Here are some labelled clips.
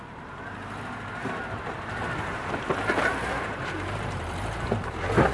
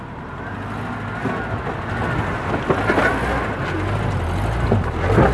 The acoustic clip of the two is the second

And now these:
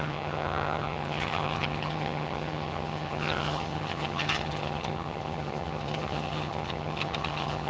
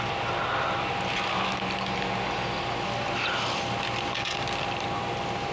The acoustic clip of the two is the second